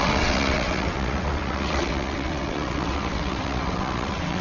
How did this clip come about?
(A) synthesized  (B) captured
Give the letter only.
A